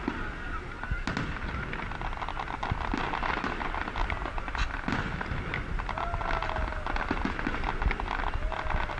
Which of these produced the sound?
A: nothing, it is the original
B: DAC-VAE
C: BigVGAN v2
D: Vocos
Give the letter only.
A